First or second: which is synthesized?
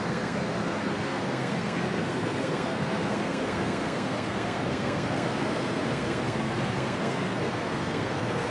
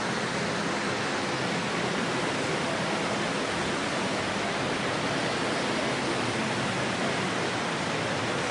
first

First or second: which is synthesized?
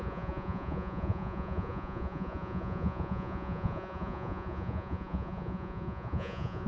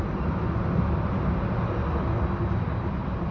first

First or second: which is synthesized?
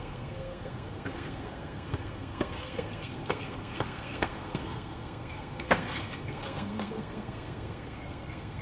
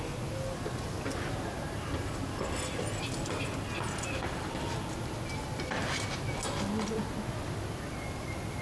first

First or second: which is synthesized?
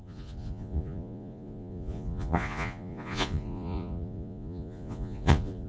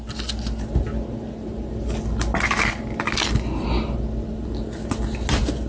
first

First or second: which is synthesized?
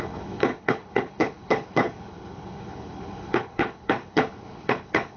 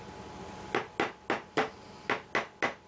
first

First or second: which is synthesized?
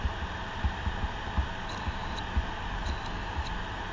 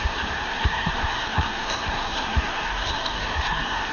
second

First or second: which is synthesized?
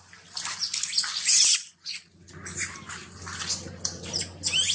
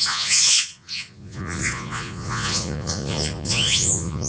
second